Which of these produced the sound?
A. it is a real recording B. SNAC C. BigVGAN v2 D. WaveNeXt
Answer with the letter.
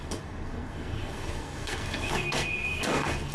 B